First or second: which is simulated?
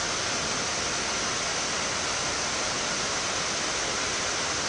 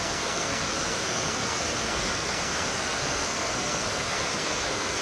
second